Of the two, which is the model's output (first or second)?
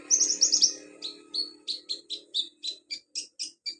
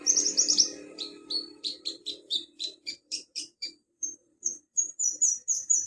second